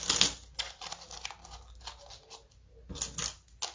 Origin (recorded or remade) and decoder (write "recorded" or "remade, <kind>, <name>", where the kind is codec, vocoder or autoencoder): recorded